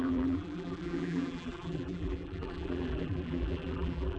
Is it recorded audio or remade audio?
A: remade